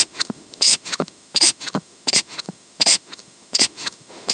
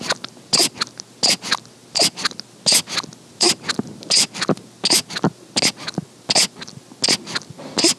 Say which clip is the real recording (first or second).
second